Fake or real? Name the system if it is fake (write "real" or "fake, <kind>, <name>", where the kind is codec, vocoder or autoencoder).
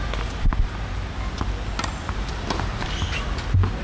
real